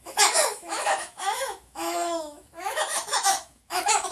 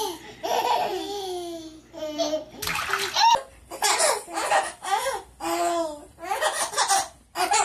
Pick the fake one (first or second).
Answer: first